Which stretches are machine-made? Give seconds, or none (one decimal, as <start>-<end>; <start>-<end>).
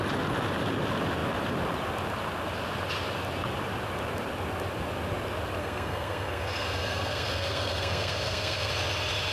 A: 5.6-8.7